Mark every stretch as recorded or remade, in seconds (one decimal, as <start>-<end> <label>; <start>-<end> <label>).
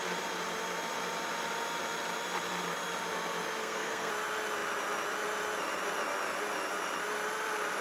0.0-3.6 recorded; 3.6-4.1 remade; 4.1-7.8 recorded